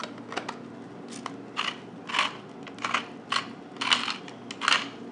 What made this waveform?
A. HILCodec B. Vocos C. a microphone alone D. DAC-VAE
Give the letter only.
C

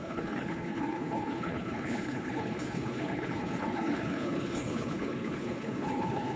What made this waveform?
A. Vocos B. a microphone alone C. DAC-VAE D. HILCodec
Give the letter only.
D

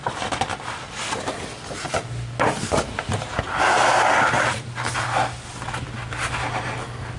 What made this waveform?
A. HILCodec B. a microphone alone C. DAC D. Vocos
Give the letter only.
B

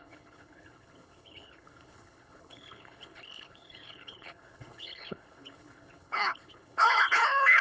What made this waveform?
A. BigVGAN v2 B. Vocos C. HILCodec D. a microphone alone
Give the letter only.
C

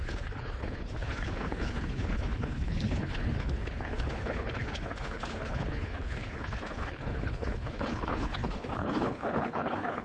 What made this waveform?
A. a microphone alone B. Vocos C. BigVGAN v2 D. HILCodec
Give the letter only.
D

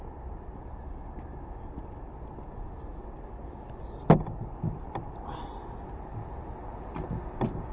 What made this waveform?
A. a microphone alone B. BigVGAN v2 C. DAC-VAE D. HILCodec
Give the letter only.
A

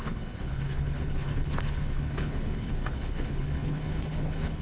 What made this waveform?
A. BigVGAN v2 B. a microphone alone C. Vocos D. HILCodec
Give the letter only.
D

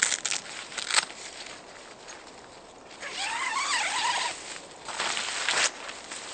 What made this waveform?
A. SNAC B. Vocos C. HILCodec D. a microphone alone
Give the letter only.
D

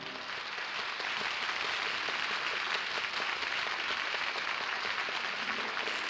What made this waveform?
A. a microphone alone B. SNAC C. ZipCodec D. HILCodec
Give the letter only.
A